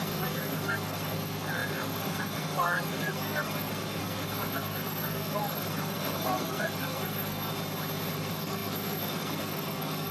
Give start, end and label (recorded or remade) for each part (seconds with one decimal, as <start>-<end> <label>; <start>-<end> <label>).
0.0-7.5 remade; 7.5-8.1 recorded; 8.1-10.1 remade